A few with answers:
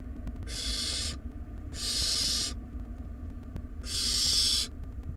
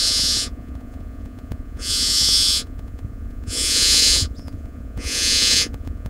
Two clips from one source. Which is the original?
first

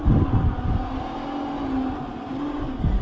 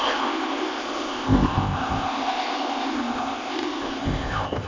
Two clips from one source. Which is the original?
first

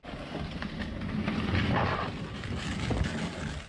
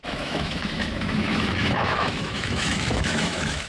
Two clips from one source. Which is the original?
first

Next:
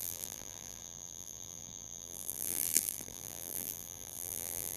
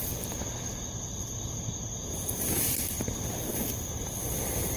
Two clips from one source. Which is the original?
second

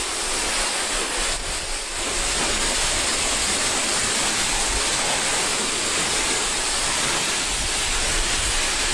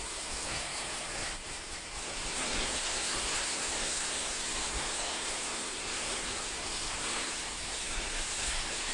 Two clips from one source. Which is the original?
first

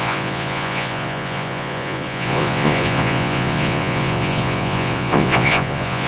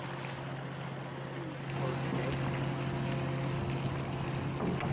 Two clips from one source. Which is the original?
second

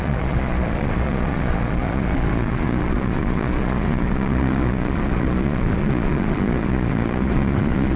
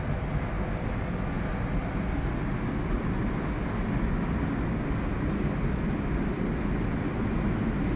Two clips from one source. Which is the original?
second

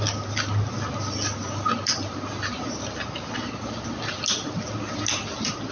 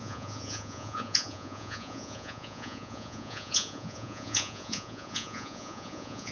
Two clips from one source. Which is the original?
first